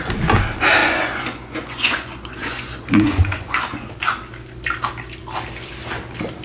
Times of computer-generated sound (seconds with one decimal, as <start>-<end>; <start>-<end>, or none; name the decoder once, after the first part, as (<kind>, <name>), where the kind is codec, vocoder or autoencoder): 0.8-3.9 (vocoder, Vocos)